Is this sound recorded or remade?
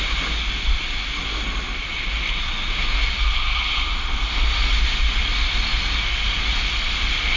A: recorded